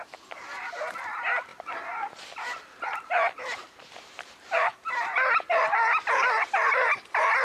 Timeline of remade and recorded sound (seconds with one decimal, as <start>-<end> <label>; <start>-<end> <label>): 0.0-7.4 recorded